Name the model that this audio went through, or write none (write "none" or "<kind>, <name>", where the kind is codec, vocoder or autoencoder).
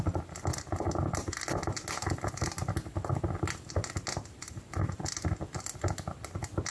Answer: none